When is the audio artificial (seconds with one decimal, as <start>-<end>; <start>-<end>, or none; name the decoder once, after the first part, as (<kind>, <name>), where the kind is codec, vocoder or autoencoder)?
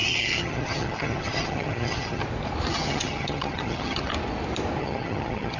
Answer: 0.0-2.2 (vocoder, HiFi-GAN); 2.7-4.1; 4.8-5.6